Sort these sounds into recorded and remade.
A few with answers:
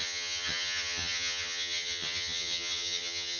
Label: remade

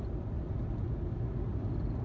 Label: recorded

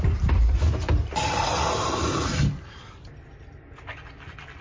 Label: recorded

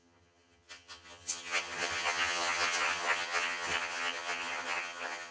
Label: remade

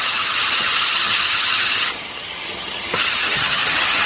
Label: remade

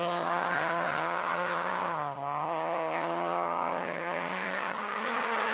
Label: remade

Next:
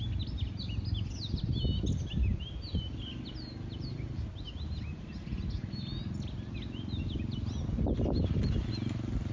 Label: recorded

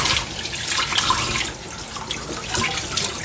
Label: recorded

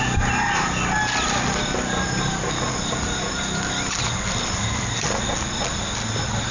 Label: recorded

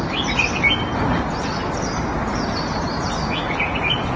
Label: recorded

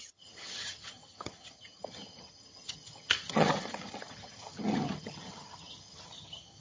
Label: remade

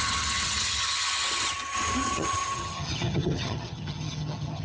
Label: remade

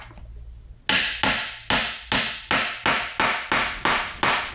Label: recorded